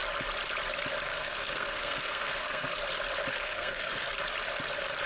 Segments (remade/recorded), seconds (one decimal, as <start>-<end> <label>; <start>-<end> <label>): 0.0-1.1 recorded; 1.1-2.8 remade; 2.8-3.3 recorded; 3.3-4.1 remade; 4.1-5.1 recorded